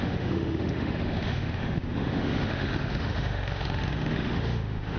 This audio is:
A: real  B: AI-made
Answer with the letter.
B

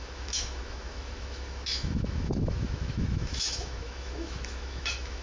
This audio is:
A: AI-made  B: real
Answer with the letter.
A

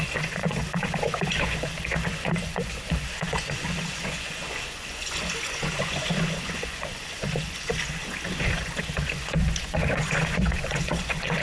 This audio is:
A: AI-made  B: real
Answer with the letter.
A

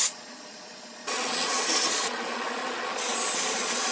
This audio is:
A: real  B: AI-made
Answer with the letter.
B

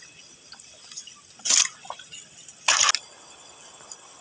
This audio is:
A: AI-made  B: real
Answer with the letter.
B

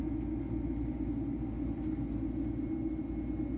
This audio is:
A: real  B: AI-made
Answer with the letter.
A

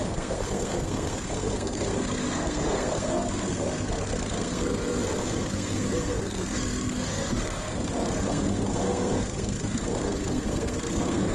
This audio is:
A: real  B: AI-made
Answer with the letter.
B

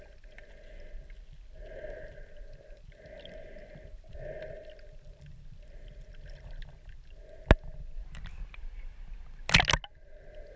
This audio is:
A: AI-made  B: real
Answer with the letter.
B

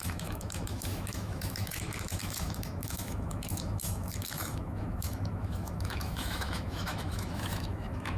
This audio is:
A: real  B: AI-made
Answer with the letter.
B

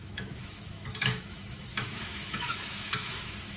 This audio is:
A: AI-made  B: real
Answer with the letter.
A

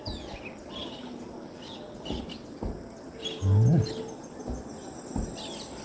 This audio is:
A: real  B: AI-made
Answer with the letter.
A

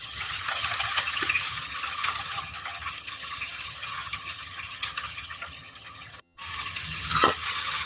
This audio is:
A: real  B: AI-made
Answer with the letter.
B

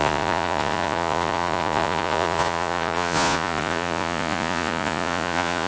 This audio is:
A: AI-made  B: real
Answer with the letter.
A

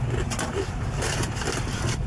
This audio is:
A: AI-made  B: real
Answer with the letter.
B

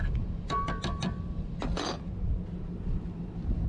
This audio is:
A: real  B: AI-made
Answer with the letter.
A